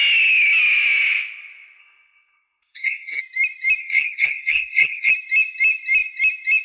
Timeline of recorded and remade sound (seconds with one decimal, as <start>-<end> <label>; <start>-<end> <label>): 0.0-1.8 recorded; 1.8-3.2 remade; 3.2-3.8 recorded; 3.8-5.1 remade; 5.1-6.6 recorded